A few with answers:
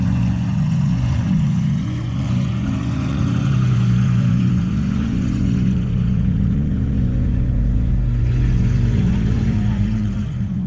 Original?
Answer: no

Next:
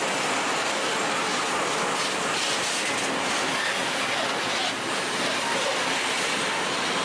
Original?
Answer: yes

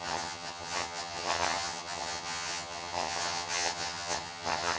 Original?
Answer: no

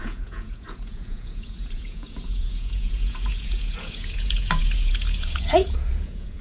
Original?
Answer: no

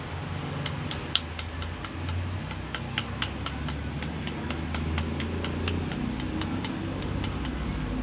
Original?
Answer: yes